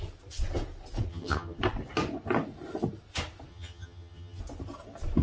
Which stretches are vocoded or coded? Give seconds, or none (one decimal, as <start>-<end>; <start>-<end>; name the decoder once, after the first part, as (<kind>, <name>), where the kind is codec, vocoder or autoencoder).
1.1-1.6 (vocoder, HiFi-GAN); 3.5-4.4